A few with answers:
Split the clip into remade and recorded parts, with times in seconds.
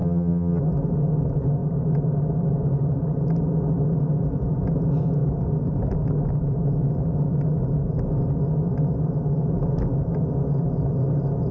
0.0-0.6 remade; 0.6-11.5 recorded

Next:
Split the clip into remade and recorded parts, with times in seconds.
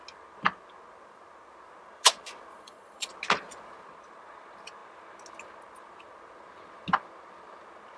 0.0-2.5 recorded; 2.5-3.1 remade; 3.1-8.0 recorded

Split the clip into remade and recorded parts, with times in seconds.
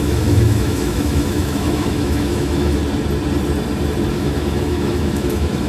0.0-2.8 remade; 2.8-4.1 recorded; 4.1-5.7 remade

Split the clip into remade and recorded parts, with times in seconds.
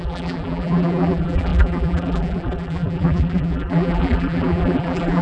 0.0-5.2 remade